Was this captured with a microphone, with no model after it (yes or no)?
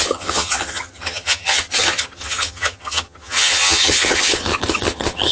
no